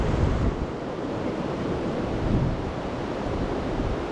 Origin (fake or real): fake